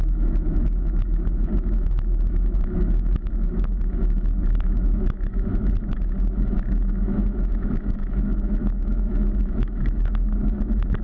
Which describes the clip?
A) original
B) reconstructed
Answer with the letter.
B